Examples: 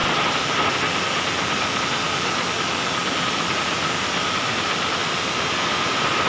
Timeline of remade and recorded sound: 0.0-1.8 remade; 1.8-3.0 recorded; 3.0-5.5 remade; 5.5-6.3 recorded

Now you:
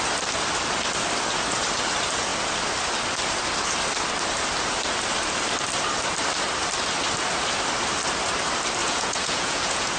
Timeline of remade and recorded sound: 0.0-8.8 recorded; 8.8-10.0 remade

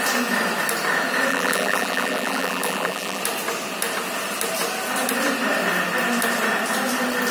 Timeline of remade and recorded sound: 0.0-1.3 recorded; 1.3-3.2 remade; 3.2-7.3 recorded

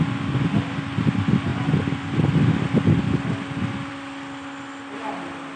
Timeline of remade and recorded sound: 0.0-5.6 recorded